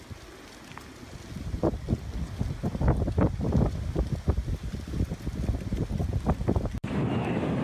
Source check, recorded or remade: recorded